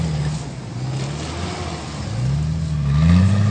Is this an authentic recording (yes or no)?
yes